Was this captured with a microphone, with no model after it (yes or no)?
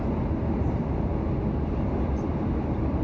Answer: yes